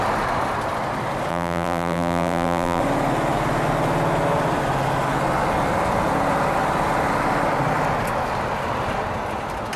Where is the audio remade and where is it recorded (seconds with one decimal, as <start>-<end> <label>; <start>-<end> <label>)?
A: 0.0-1.3 recorded; 1.3-2.8 remade; 2.8-9.8 recorded